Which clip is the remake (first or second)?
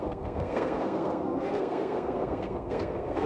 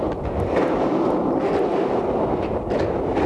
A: first